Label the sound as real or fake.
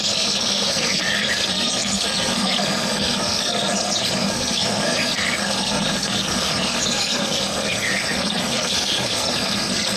fake